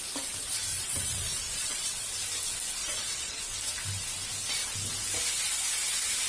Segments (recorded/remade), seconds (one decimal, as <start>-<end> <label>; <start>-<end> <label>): 0.0-0.7 recorded; 0.7-2.1 remade; 2.1-2.8 recorded; 2.8-3.4 remade; 3.4-6.3 recorded